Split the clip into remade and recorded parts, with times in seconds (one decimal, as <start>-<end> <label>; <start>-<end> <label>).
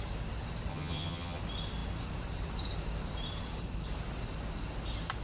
0.0-0.7 recorded; 0.7-1.4 remade; 1.4-5.2 recorded